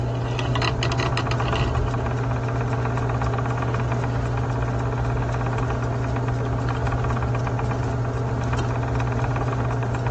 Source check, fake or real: real